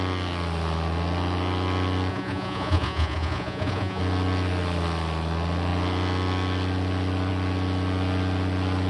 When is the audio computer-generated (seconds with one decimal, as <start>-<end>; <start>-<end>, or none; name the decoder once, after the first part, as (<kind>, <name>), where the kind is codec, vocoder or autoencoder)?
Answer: 2.1-4.0 (vocoder, Vocos)